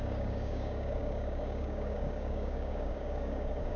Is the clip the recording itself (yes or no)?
no